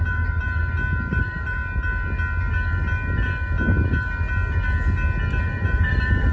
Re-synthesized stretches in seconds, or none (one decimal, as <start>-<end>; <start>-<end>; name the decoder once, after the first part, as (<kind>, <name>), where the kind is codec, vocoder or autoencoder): 0.0-0.6 (vocoder, BigVGAN v2); 1.2-1.6; 5.4-6.3